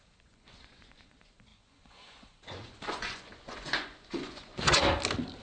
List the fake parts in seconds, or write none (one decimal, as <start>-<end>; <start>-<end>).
0.0-4.8